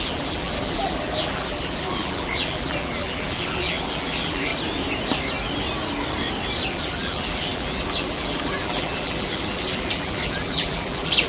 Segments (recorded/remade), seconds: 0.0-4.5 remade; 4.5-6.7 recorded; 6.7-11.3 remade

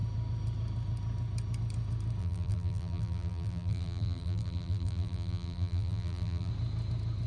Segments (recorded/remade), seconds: 0.0-2.2 recorded; 2.2-6.5 remade; 6.5-7.3 recorded